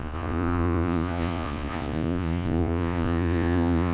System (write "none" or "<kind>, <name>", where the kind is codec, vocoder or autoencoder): vocoder, Vocos